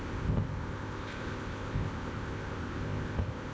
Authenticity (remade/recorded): remade